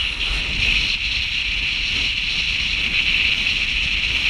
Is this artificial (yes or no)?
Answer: no